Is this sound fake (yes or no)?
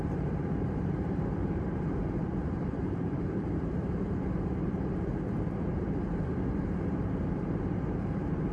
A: yes